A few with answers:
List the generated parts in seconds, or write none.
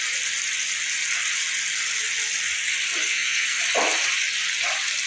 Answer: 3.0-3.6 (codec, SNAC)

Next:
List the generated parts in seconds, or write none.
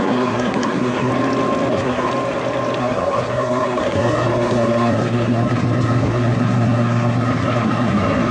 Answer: 0.0-1.1 (codec, SNAC); 1.7-2.1; 2.8-8.3